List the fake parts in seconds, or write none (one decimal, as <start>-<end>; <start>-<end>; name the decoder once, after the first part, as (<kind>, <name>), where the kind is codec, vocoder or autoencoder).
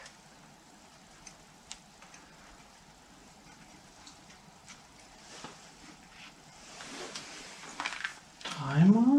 3.2-7.5 (vocoder, BigVGAN v2)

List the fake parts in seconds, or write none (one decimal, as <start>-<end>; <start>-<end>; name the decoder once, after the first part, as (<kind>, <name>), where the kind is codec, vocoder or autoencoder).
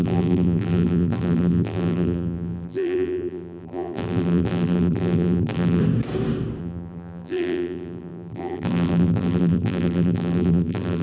0.0-5.8 (vocoder, BigVGAN v2); 6.6-11.0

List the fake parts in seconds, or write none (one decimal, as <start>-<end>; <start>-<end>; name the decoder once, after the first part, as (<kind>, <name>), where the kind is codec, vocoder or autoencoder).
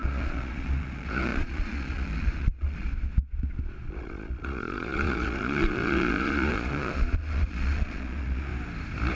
0.0-2.9 (vocoder, Vocos); 3.7-8.5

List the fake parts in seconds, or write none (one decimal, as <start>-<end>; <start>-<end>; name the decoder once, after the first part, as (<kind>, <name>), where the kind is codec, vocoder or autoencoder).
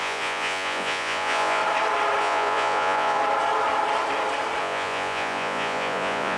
0.0-1.6 (vocoder, Vocos); 2.2-3.2; 4.6-6.4